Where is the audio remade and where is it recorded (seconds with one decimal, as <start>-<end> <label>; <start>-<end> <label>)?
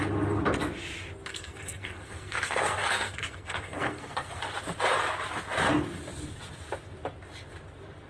0.0-1.3 recorded; 1.3-4.4 remade; 4.4-8.1 recorded